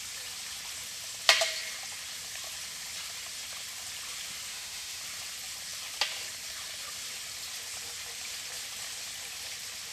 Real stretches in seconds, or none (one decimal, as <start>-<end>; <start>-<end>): 0.0-4.5; 5.0-9.9

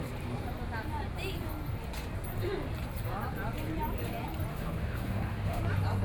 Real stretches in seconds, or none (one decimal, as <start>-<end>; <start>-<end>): 0.0-4.5; 5.6-6.0